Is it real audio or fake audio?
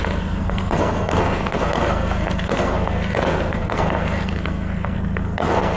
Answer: fake